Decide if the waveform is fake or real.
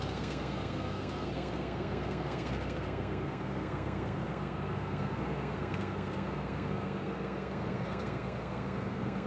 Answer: fake